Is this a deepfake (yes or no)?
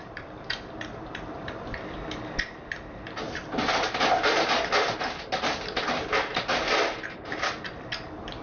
no